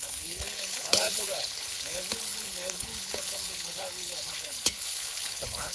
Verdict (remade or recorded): remade